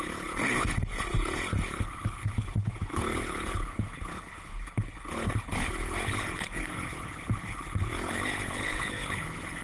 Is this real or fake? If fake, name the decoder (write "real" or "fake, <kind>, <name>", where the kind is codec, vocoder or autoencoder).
fake, codec, HILCodec